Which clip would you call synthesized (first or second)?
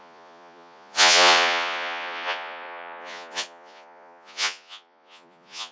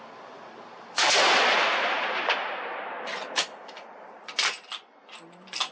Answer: first